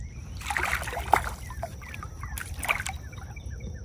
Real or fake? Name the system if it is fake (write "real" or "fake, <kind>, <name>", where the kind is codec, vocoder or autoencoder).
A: fake, vocoder, BigVGAN v2